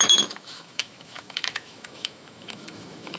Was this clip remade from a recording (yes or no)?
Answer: yes